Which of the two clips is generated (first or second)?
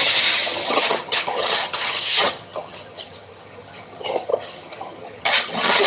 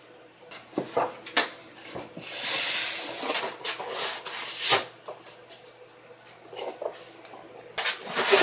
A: first